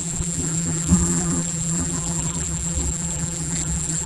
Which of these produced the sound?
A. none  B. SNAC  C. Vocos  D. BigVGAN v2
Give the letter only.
D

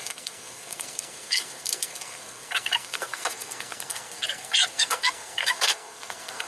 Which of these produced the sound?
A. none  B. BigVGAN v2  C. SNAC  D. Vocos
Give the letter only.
C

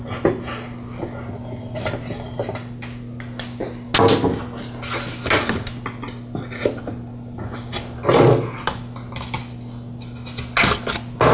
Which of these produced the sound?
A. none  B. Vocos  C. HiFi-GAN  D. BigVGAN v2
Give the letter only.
A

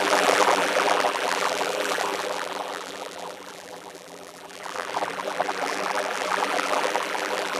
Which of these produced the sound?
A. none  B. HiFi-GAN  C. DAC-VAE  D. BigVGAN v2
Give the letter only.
D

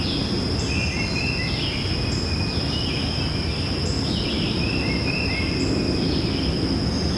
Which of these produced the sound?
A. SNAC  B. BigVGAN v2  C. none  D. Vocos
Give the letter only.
C